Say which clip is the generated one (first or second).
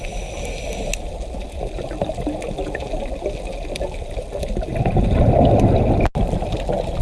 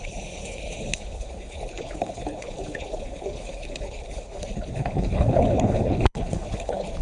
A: second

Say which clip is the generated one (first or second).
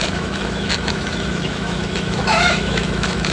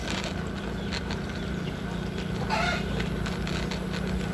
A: first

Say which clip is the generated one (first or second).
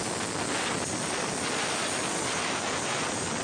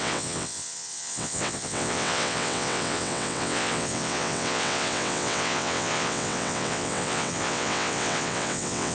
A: second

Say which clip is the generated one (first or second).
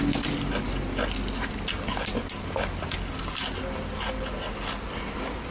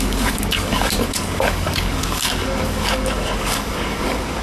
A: second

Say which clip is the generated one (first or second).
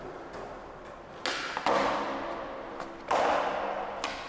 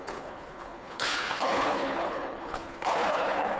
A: second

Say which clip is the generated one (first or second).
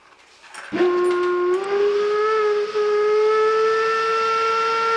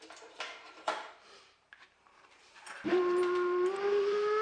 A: second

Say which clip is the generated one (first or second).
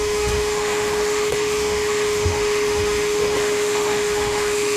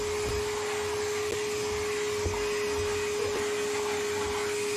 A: first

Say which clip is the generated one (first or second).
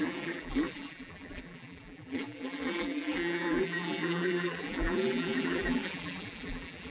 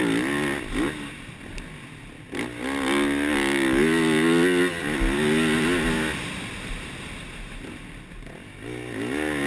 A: first